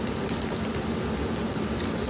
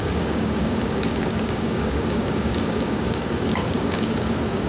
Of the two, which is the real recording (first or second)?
first